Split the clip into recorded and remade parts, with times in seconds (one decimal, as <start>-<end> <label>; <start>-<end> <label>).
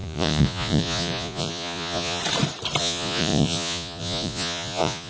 0.0-2.2 remade; 2.2-2.8 recorded; 2.8-5.1 remade